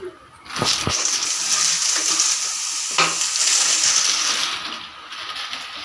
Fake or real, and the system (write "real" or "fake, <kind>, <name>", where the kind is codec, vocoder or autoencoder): real